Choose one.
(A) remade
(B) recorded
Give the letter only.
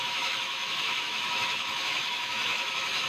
A